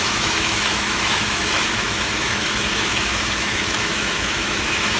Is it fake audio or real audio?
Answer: fake